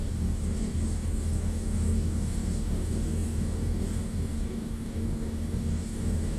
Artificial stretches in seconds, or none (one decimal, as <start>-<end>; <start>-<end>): 0.0-6.4